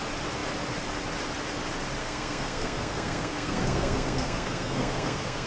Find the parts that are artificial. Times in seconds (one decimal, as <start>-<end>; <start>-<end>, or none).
2.0-5.5